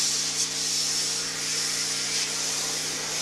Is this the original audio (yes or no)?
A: yes